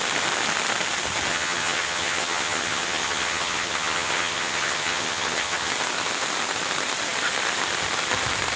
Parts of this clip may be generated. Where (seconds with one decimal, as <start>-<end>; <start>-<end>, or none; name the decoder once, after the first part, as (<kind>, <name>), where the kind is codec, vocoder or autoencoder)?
1.3-5.7 (vocoder, HiFi-GAN)